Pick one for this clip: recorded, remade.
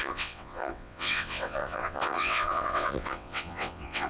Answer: remade